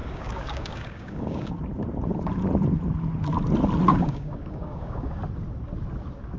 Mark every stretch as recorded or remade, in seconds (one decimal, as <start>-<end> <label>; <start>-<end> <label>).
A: 0.0-1.5 remade; 1.5-3.9 recorded; 3.9-5.1 remade; 5.1-6.4 recorded